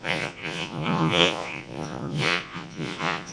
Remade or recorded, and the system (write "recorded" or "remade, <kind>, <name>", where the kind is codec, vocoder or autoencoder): remade, vocoder, Vocos